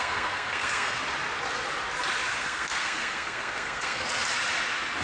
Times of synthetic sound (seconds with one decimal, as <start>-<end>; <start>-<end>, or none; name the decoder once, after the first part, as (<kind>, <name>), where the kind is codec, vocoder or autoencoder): 0.0-1.0 (codec, SNAC); 2.4-4.1